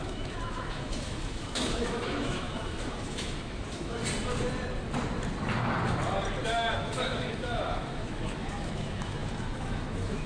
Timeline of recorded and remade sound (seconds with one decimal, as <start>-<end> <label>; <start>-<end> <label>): 0.0-4.0 remade; 4.0-6.7 recorded; 6.7-10.3 remade

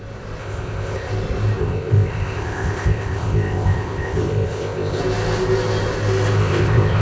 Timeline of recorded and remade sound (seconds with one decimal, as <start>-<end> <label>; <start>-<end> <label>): 0.0-0.4 recorded; 0.4-1.1 remade; 1.1-1.6 recorded; 1.6-5.0 remade; 5.0-6.4 recorded; 6.4-7.0 remade

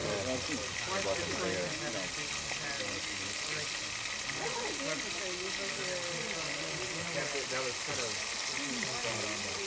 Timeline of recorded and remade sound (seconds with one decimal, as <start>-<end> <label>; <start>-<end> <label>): 0.0-9.7 recorded

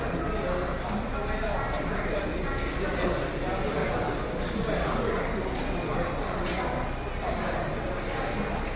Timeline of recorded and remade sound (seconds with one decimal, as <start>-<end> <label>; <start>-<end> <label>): 0.0-8.8 recorded

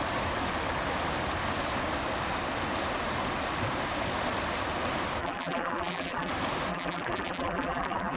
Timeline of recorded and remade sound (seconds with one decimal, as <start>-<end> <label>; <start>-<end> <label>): 0.0-5.2 recorded; 5.2-6.3 remade; 6.3-6.7 recorded; 6.7-8.2 remade

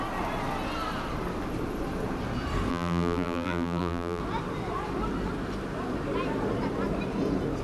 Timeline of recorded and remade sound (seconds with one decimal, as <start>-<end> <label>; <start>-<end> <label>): 0.0-2.7 recorded; 2.7-4.2 remade; 4.2-7.6 recorded

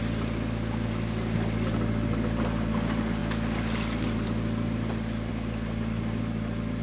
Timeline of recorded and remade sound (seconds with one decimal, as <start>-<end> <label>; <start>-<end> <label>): 0.0-6.8 recorded